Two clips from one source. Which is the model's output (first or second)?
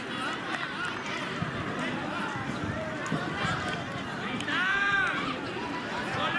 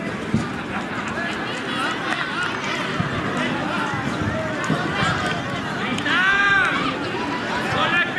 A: first